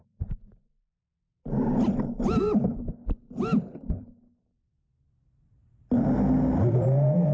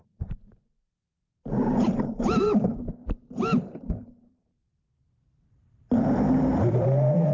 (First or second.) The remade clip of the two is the second